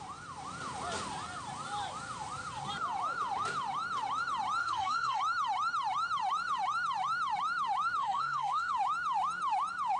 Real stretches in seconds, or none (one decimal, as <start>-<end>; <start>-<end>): 0.0-4.6; 5.2-8.0; 8.7-10.0